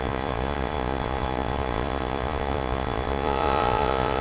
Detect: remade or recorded remade